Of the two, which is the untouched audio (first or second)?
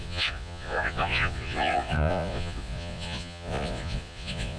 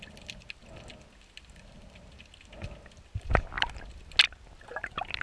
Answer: second